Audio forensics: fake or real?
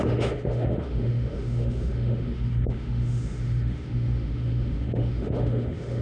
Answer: fake